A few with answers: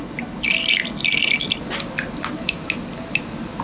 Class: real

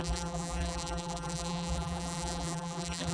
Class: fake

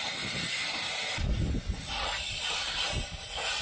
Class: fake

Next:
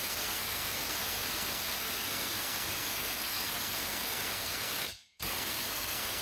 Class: fake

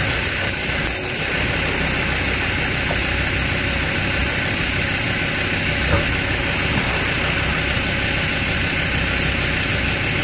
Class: real